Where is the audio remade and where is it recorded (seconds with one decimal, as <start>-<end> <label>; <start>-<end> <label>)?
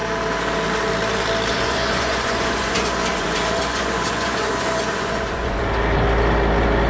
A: 0.0-1.5 recorded; 1.5-5.6 remade; 5.6-6.9 recorded